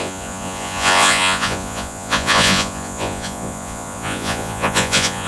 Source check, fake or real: fake